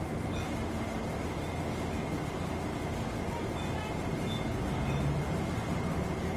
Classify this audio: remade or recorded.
recorded